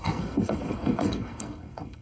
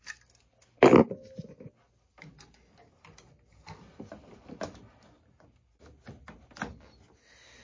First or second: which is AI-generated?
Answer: first